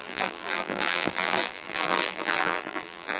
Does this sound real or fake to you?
fake